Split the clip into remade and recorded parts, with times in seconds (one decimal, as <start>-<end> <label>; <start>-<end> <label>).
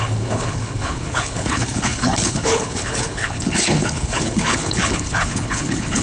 0.0-6.0 remade